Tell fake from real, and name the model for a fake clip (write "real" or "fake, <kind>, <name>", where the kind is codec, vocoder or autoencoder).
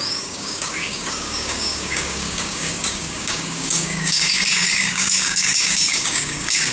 fake, codec, DAC